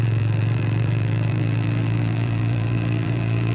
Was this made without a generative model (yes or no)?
no